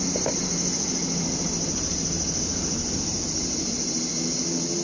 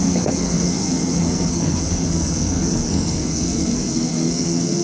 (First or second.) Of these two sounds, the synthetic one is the second